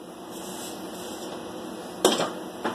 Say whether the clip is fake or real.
real